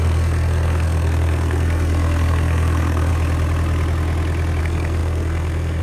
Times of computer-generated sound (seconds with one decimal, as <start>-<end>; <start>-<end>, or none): 0.0-3.1; 4.6-5.8